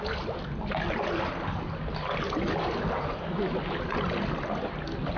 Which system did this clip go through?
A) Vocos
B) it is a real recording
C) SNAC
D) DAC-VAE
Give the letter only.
B